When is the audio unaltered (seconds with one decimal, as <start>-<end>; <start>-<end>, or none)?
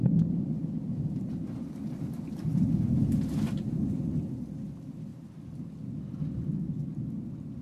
3.8-5.1; 5.7-7.6